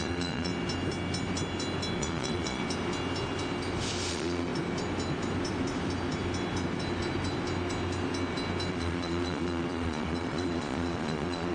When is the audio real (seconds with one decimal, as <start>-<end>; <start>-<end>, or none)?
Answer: 0.5-2.0; 2.6-4.1; 4.5-8.7